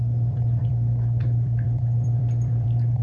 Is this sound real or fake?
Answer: fake